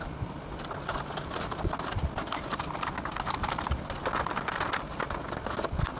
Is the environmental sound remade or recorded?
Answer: recorded